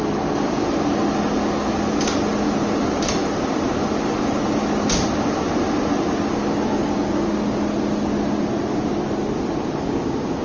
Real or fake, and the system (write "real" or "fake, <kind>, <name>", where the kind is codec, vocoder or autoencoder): real